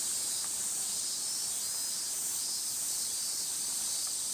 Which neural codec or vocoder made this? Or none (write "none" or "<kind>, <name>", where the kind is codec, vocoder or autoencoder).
none